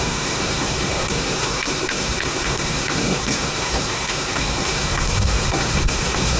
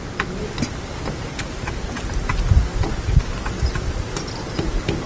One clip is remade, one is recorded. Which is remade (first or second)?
first